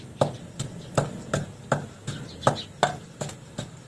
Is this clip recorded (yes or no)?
yes